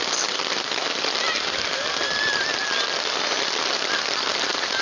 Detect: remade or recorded recorded